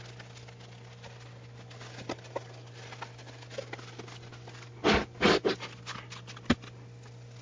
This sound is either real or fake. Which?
real